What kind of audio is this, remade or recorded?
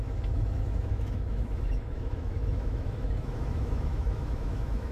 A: remade